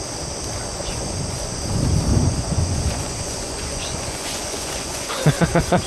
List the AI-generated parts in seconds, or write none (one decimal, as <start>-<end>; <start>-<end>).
0.7-1.8; 2.2-5.9